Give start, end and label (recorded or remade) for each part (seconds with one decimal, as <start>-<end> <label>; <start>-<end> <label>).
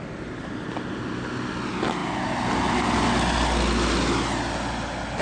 0.0-5.2 recorded